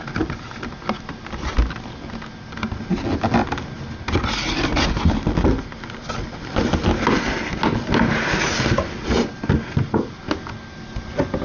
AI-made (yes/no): no